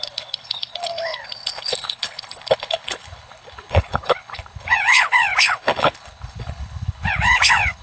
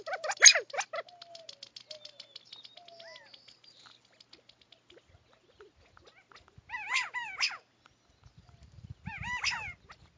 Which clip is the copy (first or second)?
first